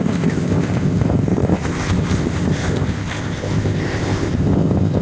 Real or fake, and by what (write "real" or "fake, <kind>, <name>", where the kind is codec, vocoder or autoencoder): fake, codec, ZipCodec